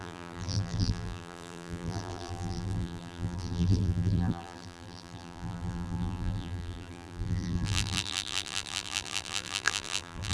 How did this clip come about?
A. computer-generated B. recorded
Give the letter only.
A